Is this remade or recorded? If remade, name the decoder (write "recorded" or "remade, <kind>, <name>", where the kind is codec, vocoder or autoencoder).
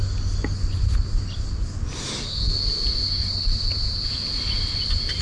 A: recorded